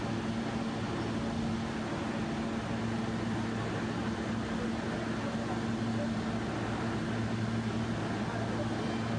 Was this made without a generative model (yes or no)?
yes